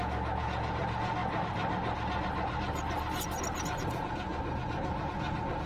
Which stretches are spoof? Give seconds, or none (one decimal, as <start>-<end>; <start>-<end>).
0.0-1.2; 3.8-4.3; 5.0-5.7